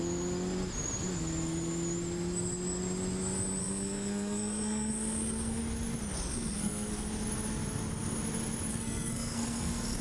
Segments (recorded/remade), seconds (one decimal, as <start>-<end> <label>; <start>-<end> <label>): 0.0-3.6 recorded; 3.6-5.6 remade; 5.6-6.3 recorded; 6.3-7.1 remade; 7.1-8.7 recorded; 8.7-10.0 remade